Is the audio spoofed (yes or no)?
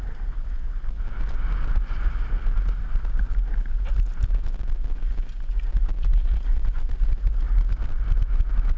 no